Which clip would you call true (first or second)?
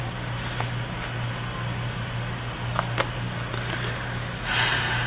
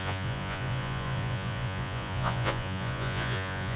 first